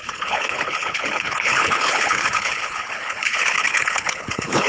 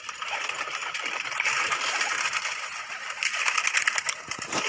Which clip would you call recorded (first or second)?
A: second